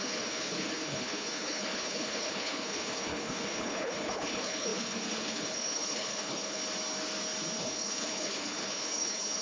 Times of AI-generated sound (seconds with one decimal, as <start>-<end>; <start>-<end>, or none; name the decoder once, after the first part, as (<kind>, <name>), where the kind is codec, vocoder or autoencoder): 0.0-6.6 (codec, HILCodec); 7.6-9.4

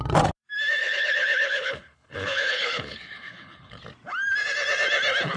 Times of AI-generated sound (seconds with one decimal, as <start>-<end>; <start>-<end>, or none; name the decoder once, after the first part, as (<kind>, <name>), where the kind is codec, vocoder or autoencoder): 0.8-3.8 (codec, HILCodec)